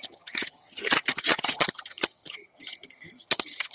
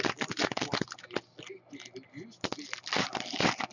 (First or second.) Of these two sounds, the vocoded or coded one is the first